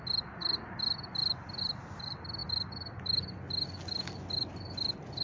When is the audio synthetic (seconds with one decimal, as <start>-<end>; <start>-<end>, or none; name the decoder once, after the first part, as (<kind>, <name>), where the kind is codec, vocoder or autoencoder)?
none